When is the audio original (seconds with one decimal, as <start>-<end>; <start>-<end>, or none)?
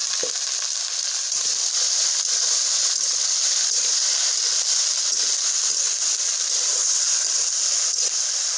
4.3-8.6